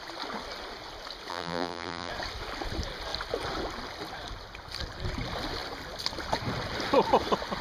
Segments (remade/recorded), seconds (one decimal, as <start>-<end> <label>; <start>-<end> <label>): 0.0-1.3 recorded; 1.3-2.1 remade; 2.1-7.6 recorded